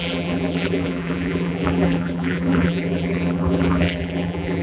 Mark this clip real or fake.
fake